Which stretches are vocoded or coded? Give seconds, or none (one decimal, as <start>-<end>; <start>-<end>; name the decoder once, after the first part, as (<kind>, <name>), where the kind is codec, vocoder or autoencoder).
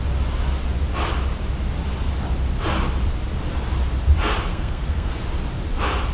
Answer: 4.5-5.1 (codec, SNAC)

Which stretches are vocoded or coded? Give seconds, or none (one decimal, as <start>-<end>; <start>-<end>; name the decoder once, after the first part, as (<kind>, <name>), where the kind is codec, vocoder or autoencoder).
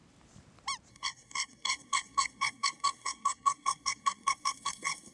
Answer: 0.9-5.1 (codec, SNAC)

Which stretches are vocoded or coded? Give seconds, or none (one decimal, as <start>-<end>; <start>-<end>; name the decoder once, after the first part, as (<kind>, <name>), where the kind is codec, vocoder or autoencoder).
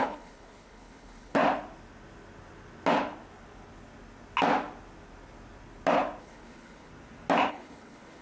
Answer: 0.0-1.4 (codec, HILCodec); 6.2-6.9; 7.5-8.2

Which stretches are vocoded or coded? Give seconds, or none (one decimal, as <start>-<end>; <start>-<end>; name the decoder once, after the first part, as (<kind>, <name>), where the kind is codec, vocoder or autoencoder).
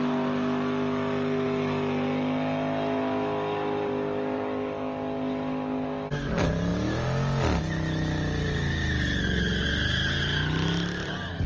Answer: none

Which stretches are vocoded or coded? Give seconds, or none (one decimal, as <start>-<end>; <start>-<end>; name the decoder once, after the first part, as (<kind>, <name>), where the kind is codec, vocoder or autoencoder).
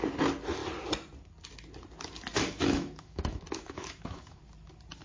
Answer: 2.3-4.4 (autoencoder, DAC-VAE)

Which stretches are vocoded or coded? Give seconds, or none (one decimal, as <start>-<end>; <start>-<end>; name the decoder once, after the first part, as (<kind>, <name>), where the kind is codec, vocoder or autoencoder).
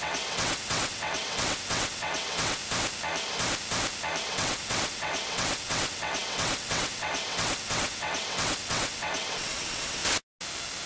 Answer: 0.0-2.6 (vocoder, WaveNeXt); 4.2-10.0